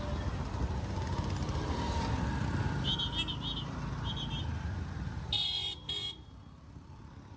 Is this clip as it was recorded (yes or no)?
yes